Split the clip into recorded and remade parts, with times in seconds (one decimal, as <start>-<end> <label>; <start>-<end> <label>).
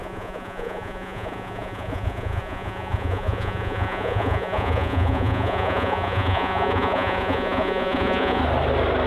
0.0-8.4 remade; 8.4-9.1 recorded